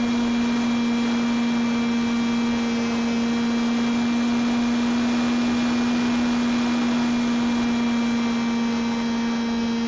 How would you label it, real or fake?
real